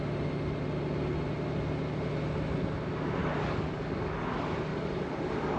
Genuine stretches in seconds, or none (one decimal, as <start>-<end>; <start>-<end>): 0.0-3.2; 4.3-4.7